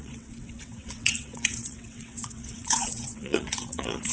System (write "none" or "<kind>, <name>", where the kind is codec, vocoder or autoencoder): vocoder, WaveNeXt